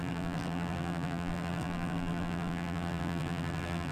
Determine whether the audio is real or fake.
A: fake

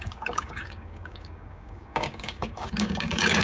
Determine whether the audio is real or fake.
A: fake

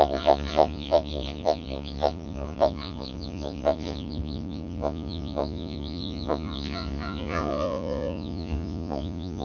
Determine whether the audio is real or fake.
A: fake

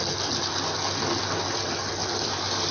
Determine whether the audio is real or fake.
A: real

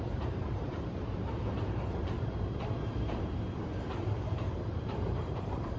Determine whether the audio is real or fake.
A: fake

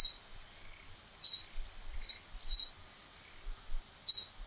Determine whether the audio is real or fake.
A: real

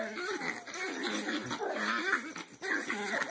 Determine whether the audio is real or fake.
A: real